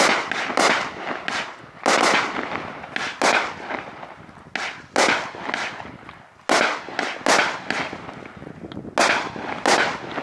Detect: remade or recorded recorded